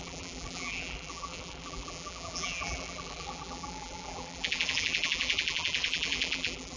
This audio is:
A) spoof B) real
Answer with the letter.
A